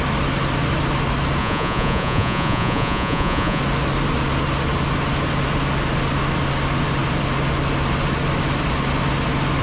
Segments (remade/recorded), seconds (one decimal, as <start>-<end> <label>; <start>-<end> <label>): 0.0-1.4 recorded; 1.4-3.6 remade; 3.6-9.6 recorded